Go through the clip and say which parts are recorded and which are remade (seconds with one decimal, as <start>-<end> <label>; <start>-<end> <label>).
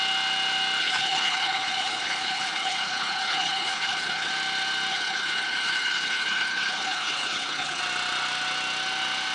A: 0.0-0.8 recorded; 0.8-4.3 remade; 4.3-4.9 recorded; 4.9-7.8 remade; 7.8-9.3 recorded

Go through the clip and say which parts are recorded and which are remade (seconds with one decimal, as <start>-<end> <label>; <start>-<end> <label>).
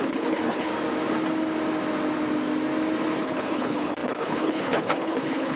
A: 0.0-0.7 remade; 0.7-3.2 recorded; 3.2-5.6 remade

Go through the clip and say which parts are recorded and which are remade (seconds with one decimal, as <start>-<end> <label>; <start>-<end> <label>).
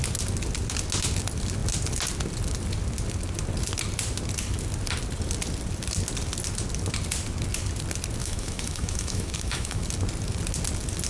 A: 0.0-8.2 recorded; 8.2-9.8 remade; 9.8-11.1 recorded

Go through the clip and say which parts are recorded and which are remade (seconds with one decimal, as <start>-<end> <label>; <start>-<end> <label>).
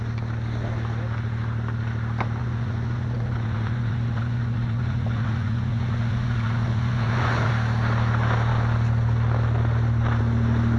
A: 0.0-2.4 recorded; 2.4-7.5 remade; 7.5-10.8 recorded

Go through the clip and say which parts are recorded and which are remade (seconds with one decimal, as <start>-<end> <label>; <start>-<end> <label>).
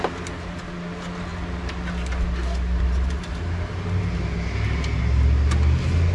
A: 0.0-6.1 recorded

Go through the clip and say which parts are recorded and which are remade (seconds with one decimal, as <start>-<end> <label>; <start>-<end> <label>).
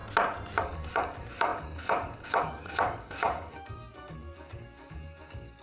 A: 0.0-0.6 recorded; 0.6-5.6 remade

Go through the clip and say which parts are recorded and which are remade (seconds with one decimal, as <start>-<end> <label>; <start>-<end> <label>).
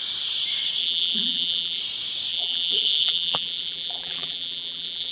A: 0.0-0.8 recorded; 0.8-1.8 remade; 1.8-2.3 recorded; 2.3-5.1 remade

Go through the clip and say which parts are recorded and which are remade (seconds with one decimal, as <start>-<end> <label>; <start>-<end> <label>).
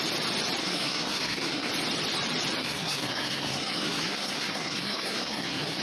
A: 0.0-0.6 recorded; 0.6-1.7 remade; 1.7-2.6 recorded; 2.6-5.8 remade